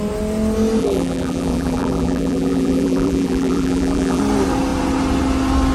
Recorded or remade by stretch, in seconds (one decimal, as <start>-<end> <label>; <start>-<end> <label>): 0.0-0.8 recorded; 0.8-4.2 remade; 4.2-5.7 recorded